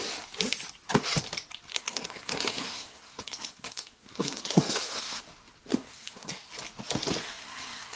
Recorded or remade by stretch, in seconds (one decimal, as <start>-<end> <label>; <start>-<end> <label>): 0.0-1.7 recorded; 1.7-5.2 remade; 5.2-5.7 recorded; 5.7-6.5 remade; 6.5-7.2 recorded; 7.2-8.0 remade